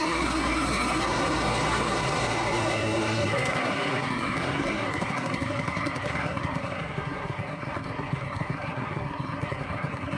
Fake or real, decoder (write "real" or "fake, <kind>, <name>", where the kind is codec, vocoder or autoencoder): fake, codec, SNAC